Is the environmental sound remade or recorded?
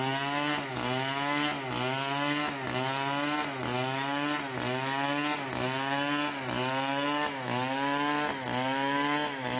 recorded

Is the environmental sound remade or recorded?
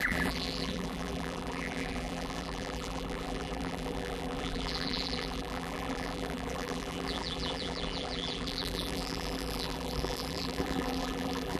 remade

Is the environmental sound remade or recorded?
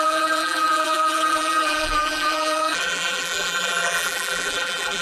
remade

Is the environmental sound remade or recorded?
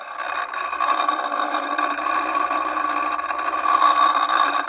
remade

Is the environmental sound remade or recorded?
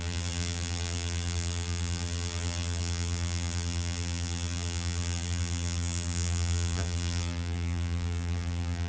remade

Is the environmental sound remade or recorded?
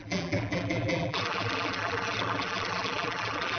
remade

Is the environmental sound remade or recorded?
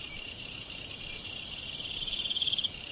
remade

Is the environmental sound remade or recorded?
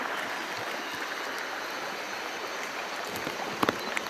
recorded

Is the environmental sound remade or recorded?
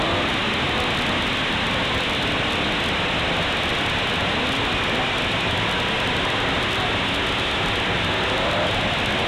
recorded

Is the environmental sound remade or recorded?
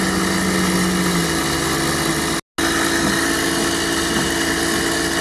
recorded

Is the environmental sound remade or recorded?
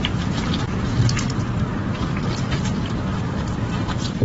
remade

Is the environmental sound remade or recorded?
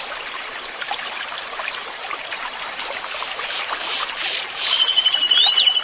remade